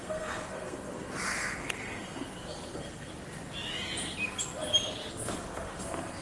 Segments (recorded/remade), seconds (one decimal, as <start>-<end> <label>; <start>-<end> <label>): 0.0-3.1 remade; 3.1-5.1 recorded; 5.1-6.2 remade